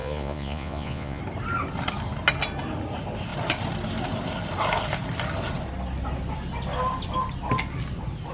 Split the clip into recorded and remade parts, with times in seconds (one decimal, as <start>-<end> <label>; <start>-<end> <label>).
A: 0.0-1.2 remade; 1.2-8.3 recorded